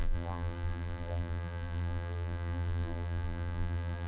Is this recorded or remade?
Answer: remade